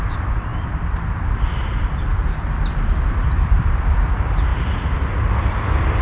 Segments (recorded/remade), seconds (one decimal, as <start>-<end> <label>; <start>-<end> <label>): 0.0-4.5 remade; 4.5-5.3 recorded; 5.3-6.0 remade